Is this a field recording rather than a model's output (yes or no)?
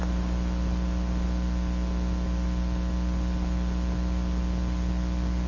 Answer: yes